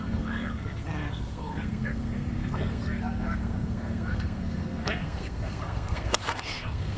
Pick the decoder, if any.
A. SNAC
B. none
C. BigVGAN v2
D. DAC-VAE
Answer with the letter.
A